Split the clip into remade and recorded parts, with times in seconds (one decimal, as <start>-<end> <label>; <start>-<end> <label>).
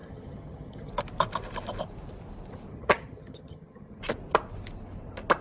0.0-0.9 remade; 0.9-2.7 recorded; 2.7-4.0 remade; 4.0-5.4 recorded